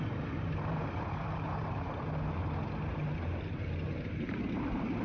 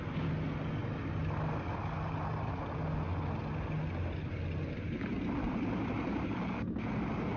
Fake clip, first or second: first